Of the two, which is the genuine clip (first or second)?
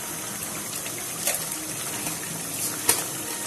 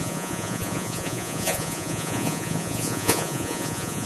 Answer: first